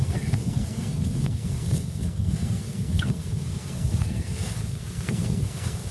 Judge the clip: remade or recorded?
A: remade